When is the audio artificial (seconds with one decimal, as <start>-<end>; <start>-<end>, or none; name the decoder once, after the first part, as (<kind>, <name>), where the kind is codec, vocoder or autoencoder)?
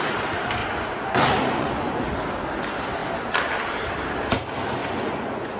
0.6-2.0 (vocoder, Vocos); 4.8-5.6